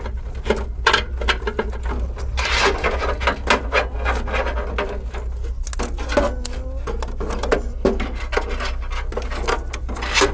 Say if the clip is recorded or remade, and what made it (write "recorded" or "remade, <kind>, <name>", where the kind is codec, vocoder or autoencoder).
recorded